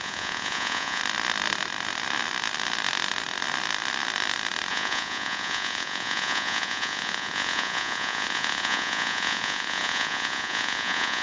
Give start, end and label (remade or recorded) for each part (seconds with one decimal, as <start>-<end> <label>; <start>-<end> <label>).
0.0-1.0 remade; 1.0-4.7 recorded; 4.7-11.2 remade